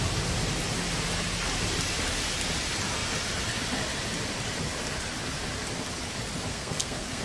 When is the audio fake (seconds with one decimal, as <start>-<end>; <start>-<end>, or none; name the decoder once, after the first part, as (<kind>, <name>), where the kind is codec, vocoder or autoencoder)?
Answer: 6.5-7.2 (codec, SNAC)